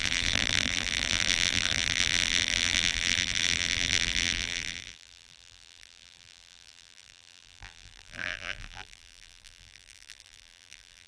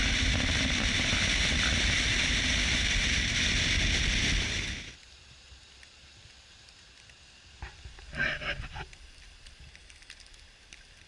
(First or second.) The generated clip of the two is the first